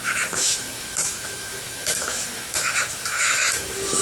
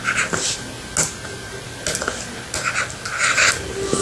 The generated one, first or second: first